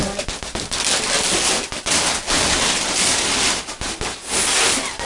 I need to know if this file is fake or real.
real